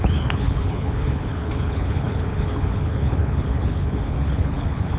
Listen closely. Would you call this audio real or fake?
fake